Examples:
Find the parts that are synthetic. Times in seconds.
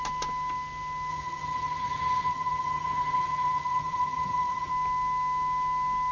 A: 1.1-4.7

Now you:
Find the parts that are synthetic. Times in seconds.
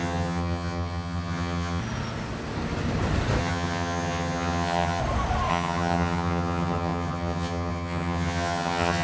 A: 0.0-1.8; 3.4-5.0; 5.5-9.0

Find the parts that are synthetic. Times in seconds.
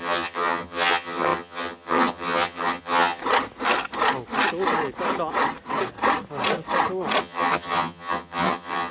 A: 0.0-3.2; 7.2-8.9